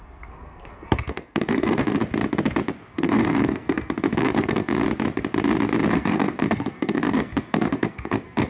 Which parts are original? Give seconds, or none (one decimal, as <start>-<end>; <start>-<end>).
2.0-2.9; 4.7-5.9